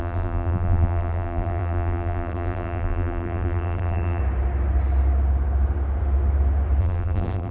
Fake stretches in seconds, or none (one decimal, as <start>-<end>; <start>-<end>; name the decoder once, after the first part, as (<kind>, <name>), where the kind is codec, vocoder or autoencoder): 0.0-4.2 (vocoder, BigVGAN v2); 6.8-7.5